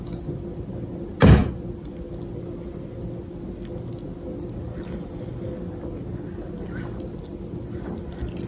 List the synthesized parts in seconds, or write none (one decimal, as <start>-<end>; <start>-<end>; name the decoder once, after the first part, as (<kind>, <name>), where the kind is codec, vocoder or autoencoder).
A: none

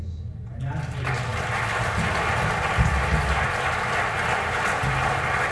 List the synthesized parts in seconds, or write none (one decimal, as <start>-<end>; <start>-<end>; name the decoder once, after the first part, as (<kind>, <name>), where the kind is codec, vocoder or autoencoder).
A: none

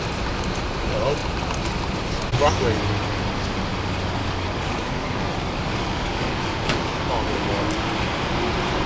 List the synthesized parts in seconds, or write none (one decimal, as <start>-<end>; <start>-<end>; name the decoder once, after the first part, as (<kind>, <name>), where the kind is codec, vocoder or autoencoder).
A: 4.2-7.0 (codec, DAC)